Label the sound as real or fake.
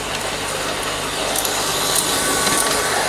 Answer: real